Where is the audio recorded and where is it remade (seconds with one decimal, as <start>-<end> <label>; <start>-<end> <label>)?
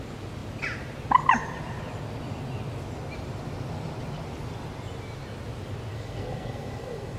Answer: 0.0-5.9 recorded; 5.9-7.2 remade